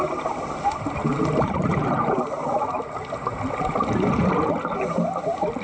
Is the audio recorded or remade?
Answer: recorded